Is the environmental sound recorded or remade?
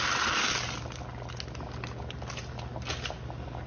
recorded